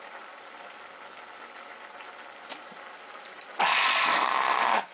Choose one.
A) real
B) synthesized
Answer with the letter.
A